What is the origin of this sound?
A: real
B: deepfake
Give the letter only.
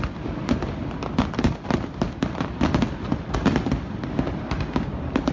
A